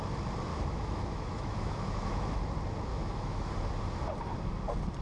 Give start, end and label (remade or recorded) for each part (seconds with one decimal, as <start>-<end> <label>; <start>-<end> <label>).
0.0-0.5 recorded; 0.5-2.4 remade; 2.4-2.9 recorded; 2.9-3.5 remade; 3.5-5.0 recorded